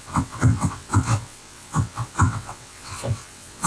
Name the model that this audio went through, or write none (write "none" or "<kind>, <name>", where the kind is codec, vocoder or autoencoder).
vocoder, WaveNeXt